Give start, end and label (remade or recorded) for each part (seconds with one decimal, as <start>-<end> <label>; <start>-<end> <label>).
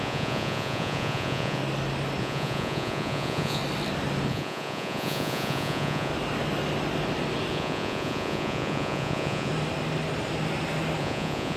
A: 0.0-1.6 remade; 1.6-2.2 recorded; 2.2-3.6 remade; 3.6-4.3 recorded; 4.3-6.1 remade; 6.1-7.5 recorded; 7.5-9.5 remade; 9.5-11.0 recorded; 11.0-11.6 remade